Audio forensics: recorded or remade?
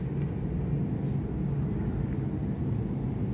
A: recorded